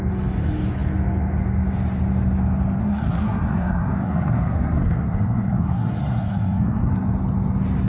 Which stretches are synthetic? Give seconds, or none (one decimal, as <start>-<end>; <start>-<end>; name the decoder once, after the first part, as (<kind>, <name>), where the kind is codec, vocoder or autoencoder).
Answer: 2.8-6.9 (codec, SNAC)